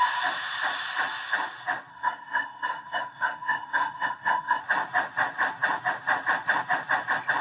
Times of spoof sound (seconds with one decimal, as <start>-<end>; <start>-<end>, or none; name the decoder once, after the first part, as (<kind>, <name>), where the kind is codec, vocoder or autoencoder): 1.9-4.6 (codec, SNAC)